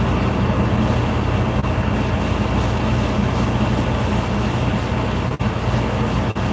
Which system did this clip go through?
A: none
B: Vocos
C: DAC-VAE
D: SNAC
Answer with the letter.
A